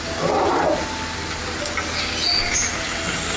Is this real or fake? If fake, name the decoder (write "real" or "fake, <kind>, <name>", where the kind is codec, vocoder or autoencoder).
real